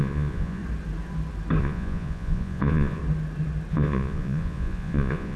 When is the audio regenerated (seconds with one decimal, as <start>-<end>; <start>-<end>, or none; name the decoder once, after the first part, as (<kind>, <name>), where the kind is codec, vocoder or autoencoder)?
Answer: 0.0-0.6 (vocoder, Vocos); 1.6-3.0; 3.7-5.4